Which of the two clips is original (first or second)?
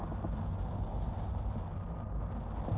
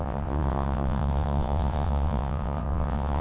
first